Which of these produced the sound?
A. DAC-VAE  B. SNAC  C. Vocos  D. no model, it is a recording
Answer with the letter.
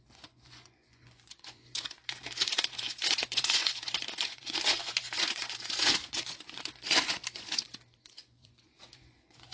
C